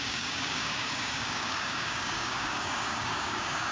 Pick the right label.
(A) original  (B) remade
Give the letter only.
B